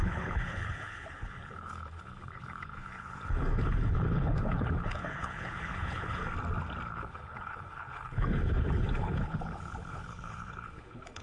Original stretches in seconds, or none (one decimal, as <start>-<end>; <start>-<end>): 6.2-6.9